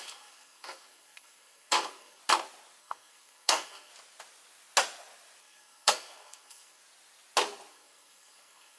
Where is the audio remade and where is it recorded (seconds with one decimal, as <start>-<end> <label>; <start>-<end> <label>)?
0.0-2.2 remade; 2.2-2.8 recorded; 2.8-3.9 remade; 3.9-5.4 recorded; 5.4-6.8 remade; 6.8-7.7 recorded; 7.7-8.8 remade